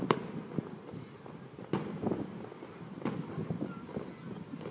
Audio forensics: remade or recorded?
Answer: recorded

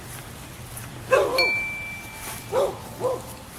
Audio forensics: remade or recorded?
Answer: recorded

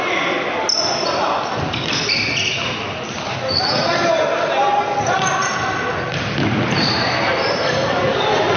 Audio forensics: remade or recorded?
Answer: recorded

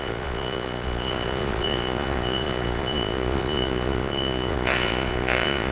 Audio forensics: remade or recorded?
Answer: remade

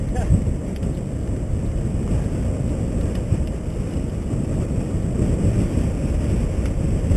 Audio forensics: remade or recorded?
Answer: recorded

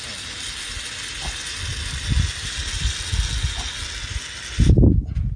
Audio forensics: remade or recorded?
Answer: recorded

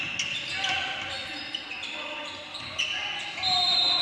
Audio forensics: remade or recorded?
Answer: recorded